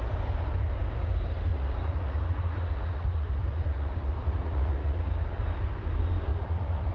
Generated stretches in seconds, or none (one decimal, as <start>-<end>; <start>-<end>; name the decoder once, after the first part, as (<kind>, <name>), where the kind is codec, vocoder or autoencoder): 1.5-5.4 (vocoder, Vocos); 6.3-6.9